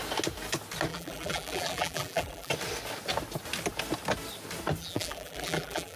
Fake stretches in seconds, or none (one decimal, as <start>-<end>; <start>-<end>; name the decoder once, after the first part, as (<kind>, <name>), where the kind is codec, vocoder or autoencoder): 0.9-2.5 (vocoder, BigVGAN v2); 4.8-6.0